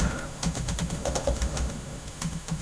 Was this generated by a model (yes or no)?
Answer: yes